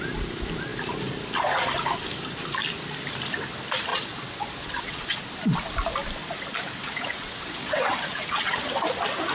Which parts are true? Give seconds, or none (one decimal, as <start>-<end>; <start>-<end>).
0.0-3.9; 5.2-6.8; 8.7-9.3